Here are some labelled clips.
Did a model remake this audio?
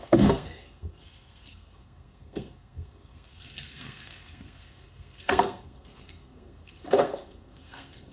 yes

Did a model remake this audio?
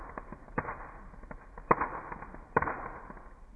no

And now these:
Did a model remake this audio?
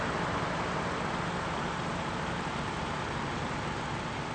no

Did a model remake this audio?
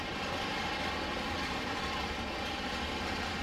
no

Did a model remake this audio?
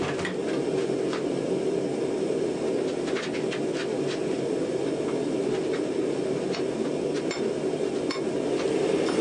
no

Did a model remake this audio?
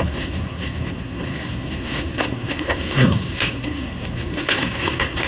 yes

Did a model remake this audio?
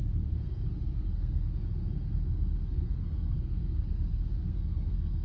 yes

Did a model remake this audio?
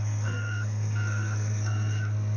yes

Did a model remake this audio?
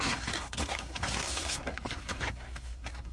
yes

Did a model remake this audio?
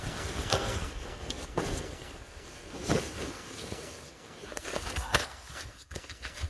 yes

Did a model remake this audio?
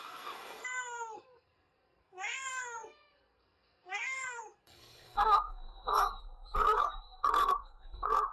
yes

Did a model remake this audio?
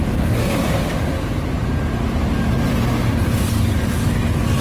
no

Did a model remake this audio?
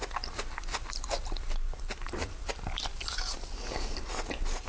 no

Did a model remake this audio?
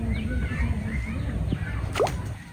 no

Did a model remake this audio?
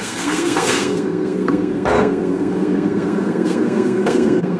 yes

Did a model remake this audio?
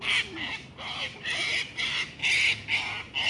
no